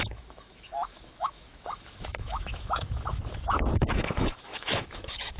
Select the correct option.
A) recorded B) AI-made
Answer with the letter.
B